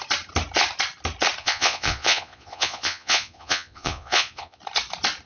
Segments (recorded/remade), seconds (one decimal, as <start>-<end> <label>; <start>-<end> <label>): 0.0-1.4 recorded; 1.4-4.6 remade; 4.6-5.3 recorded